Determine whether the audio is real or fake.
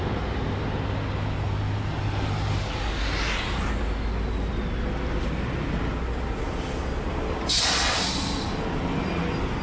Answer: real